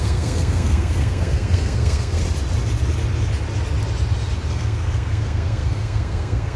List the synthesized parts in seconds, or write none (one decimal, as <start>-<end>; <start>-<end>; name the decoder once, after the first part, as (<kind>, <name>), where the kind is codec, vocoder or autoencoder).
0.0-2.2 (codec, SNAC); 4.5-6.6